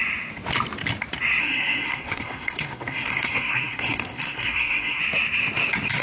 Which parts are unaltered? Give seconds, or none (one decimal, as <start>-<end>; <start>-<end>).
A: 0.0-1.4; 5.0-6.0